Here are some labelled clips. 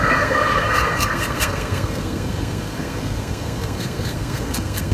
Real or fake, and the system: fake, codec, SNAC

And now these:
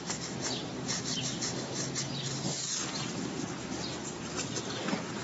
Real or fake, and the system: real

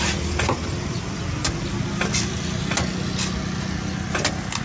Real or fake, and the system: real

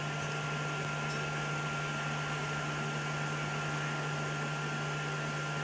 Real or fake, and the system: real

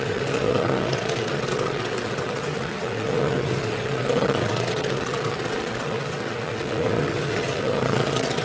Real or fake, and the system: fake, vocoder, WaveNeXt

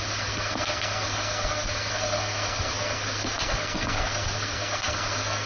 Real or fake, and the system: fake, codec, SNAC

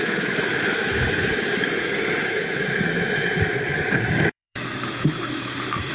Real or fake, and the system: fake, autoencoder, DAC-VAE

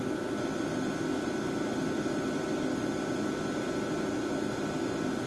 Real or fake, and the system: real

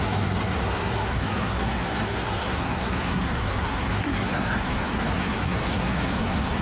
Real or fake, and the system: fake, codec, SNAC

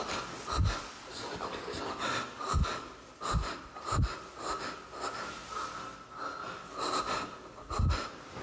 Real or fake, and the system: real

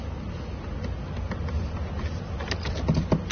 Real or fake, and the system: real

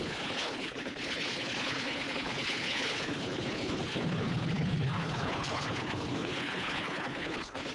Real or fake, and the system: fake, codec, HILCodec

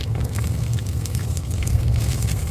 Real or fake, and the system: fake, codec, SNAC